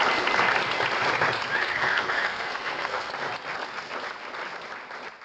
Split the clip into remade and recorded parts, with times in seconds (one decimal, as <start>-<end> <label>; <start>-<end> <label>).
0.0-1.6 recorded; 1.6-3.1 remade; 3.1-5.2 recorded